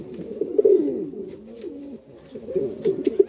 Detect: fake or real real